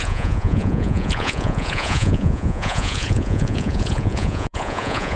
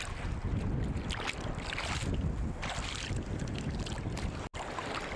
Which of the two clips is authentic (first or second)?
second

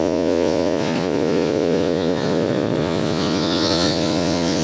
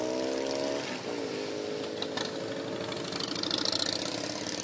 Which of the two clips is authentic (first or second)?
second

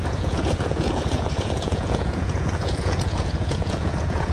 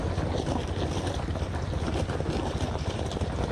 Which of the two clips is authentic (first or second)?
second